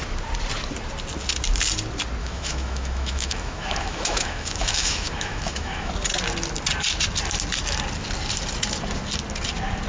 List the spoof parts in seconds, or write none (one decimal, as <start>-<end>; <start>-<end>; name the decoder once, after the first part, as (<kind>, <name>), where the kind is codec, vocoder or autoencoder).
2.2-5.9 (autoencoder, DAC-VAE)